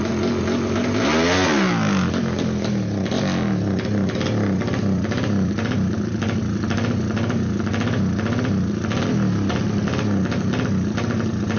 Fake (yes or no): no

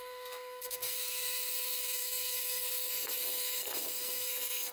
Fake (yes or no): yes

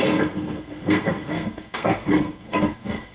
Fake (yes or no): yes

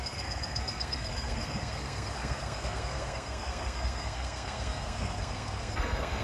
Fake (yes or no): yes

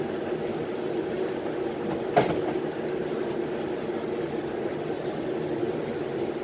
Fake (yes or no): no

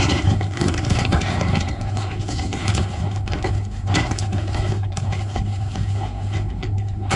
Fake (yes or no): yes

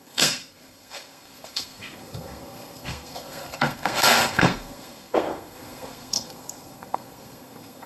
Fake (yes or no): yes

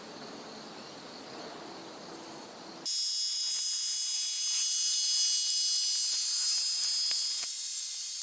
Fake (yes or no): no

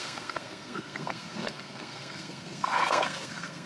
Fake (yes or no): yes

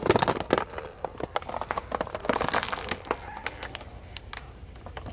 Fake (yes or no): no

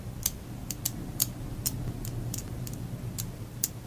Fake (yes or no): no